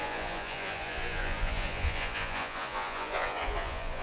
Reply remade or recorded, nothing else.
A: remade